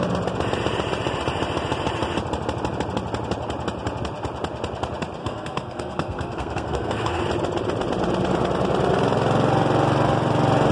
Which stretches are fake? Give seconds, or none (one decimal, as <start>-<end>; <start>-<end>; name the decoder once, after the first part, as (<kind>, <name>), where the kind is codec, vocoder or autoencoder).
5.2-7.2 (codec, SNAC)